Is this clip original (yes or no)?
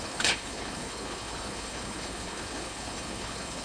no